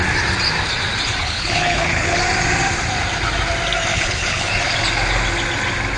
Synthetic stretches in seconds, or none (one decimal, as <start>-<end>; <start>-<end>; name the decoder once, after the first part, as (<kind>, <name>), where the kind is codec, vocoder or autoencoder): 1.2-2.2 (codec, HILCodec); 3.9-4.5